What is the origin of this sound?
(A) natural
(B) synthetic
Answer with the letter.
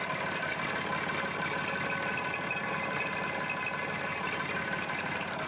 A